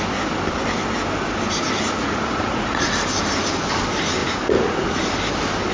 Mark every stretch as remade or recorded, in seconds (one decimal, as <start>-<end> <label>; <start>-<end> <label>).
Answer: 0.0-2.0 recorded; 2.0-2.9 remade; 2.9-4.2 recorded; 4.2-5.0 remade; 5.0-5.7 recorded